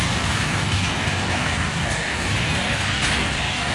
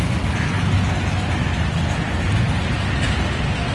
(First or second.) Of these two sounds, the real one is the second